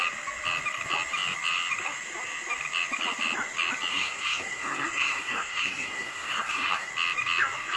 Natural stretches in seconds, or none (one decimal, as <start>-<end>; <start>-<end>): 0.0-3.9; 6.9-7.8